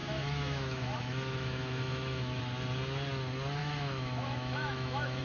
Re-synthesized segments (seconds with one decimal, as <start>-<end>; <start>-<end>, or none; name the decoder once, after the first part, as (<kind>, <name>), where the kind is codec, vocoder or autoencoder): 0.0-2.4 (autoencoder, DAC-VAE); 3.6-5.2